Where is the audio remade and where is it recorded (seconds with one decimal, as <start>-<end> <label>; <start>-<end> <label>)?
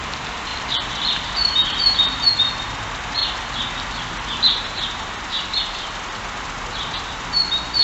0.0-0.5 recorded; 0.5-2.3 remade; 2.3-7.8 recorded